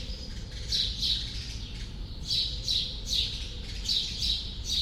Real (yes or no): yes